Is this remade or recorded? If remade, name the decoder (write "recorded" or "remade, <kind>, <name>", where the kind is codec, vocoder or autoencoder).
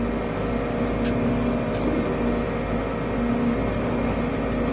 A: recorded